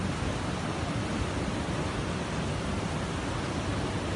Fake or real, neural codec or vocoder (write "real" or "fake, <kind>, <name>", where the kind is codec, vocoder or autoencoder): real